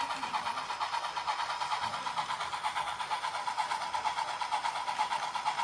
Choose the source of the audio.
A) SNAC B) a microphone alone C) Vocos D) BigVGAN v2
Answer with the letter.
B